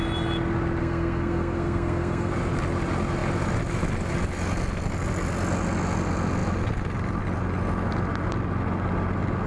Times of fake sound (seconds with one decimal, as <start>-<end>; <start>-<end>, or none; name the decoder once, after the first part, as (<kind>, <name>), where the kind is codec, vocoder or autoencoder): 0.8-2.3 (codec, SNAC)